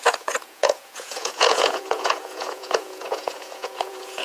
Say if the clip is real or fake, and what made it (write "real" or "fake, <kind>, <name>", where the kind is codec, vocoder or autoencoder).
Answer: fake, vocoder, Vocos